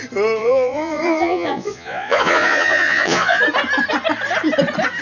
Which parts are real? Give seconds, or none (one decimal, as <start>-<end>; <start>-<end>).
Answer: 0.0-0.4; 3.4-5.0